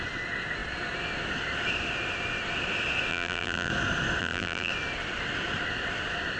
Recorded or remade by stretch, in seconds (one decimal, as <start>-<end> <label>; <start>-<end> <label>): 0.0-3.1 recorded; 3.1-3.7 remade; 3.7-4.2 recorded; 4.2-4.7 remade; 4.7-6.4 recorded